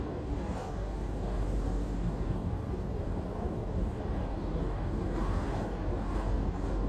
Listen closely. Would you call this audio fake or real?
fake